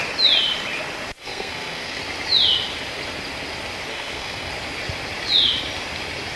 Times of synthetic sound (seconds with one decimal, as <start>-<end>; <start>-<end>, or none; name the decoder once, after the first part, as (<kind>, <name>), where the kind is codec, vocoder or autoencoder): 1.2-2.0 (codec, SNAC); 3.9-4.5